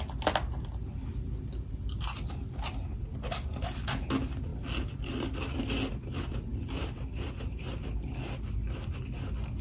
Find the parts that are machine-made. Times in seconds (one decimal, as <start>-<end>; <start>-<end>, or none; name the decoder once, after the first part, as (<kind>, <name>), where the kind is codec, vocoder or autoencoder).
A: none